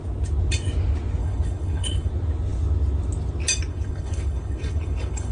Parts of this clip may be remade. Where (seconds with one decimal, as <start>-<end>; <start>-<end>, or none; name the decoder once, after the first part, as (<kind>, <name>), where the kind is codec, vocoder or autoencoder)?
1.2-2.1 (codec, HILCodec); 3.7-5.3